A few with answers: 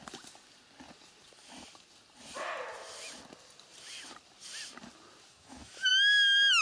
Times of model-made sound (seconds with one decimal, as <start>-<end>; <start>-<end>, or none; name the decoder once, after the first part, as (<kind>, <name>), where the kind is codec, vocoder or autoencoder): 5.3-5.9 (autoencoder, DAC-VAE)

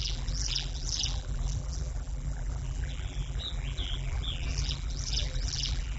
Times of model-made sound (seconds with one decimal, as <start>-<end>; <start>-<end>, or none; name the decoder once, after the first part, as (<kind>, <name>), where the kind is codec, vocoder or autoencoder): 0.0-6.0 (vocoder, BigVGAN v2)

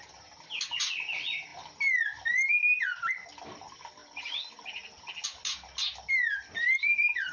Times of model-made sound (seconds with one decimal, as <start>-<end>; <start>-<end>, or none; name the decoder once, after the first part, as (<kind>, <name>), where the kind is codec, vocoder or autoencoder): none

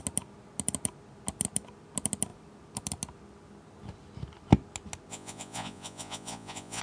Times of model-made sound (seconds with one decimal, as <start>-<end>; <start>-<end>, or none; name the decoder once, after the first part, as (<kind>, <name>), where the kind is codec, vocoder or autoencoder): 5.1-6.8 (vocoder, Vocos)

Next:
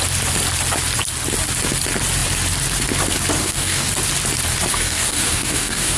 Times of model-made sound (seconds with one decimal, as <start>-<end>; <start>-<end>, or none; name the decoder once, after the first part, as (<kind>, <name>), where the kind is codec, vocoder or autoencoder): 3.4-3.9 (codec, DAC); 4.7-6.0

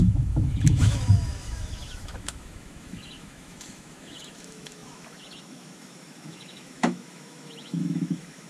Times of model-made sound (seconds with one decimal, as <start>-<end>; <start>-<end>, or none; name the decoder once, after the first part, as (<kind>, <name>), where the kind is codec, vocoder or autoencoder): 0.0-8.5 (autoencoder, DAC-VAE)